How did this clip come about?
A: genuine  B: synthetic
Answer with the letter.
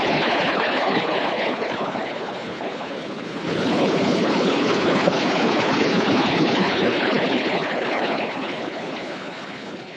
B